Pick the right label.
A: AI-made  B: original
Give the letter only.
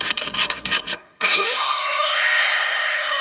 A